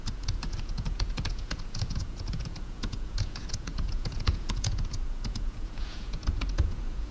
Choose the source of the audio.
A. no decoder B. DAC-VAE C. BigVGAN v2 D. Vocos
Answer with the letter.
D